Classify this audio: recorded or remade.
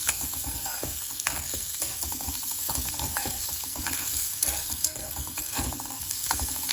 remade